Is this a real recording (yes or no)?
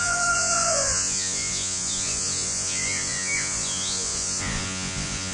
no